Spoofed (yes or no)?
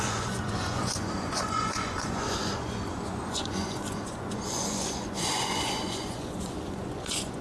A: yes